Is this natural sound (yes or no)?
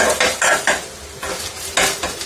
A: yes